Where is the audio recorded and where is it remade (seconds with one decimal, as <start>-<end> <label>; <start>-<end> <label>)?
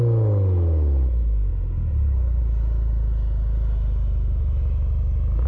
0.0-1.5 recorded; 1.5-2.4 remade; 2.4-5.5 recorded